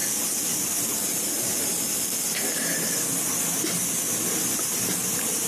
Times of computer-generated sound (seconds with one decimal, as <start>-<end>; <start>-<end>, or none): none